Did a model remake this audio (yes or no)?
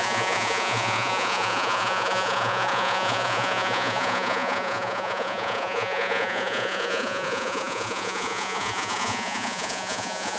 yes